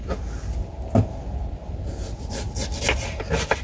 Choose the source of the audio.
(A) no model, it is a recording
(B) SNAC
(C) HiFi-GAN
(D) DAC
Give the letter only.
A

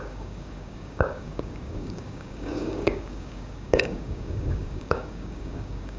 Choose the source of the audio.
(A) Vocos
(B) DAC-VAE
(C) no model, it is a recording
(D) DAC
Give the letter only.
D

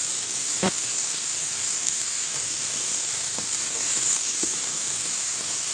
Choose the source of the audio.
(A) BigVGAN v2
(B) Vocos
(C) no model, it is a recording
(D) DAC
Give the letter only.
D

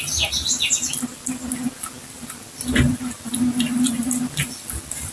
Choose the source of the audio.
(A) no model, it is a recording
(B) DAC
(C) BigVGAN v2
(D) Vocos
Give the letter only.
A